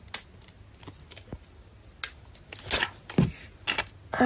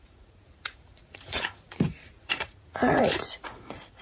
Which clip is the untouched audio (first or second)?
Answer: first